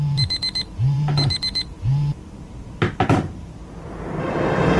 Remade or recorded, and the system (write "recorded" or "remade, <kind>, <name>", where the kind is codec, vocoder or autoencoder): remade, vocoder, BigVGAN v2